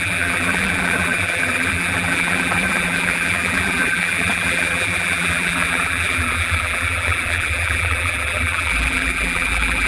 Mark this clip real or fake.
fake